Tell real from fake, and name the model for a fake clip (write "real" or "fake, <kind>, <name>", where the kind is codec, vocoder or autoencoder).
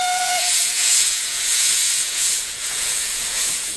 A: fake, vocoder, Vocos